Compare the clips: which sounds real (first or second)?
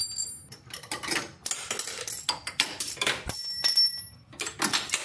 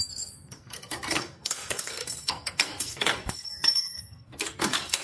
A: first